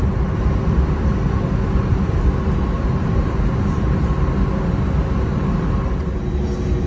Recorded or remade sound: recorded